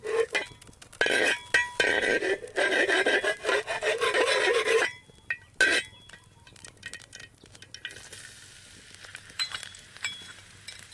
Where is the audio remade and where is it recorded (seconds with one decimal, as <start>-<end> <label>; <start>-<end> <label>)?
0.0-9.1 recorded; 9.1-10.9 remade